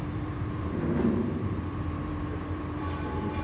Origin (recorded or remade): remade